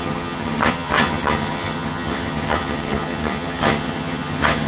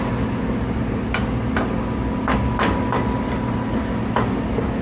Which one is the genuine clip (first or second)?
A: second